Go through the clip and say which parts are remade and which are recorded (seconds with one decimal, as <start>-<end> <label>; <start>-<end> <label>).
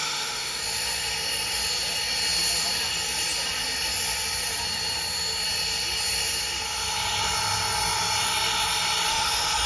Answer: 0.0-0.6 remade; 0.6-9.1 recorded; 9.1-9.7 remade